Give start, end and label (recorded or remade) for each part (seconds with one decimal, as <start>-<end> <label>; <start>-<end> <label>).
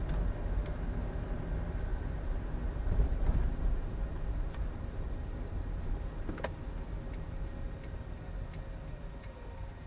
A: 0.0-1.9 recorded; 1.9-5.8 remade; 5.8-9.9 recorded